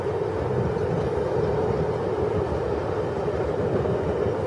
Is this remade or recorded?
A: recorded